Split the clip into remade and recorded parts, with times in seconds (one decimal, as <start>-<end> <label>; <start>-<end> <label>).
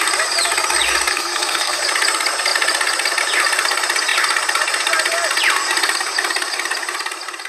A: 0.0-1.1 recorded; 1.1-1.8 remade; 1.8-7.5 recorded